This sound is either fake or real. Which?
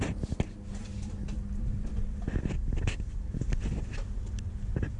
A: real